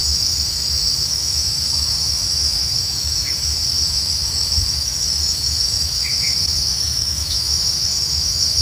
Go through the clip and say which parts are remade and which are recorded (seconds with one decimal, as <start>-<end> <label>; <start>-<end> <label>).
0.0-8.6 remade